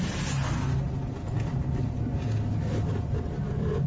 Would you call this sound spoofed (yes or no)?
no